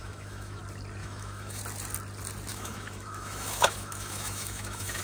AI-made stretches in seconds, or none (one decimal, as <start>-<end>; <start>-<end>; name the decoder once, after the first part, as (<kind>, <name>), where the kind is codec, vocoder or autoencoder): 0.0-0.6 (autoencoder, DAC-VAE); 1.0-1.6; 2.5-5.0